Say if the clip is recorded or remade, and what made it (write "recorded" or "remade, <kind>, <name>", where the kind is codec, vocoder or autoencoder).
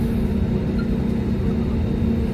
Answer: recorded